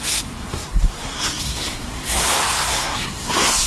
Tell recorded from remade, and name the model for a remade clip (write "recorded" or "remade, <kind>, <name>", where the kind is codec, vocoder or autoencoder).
remade, codec, SNAC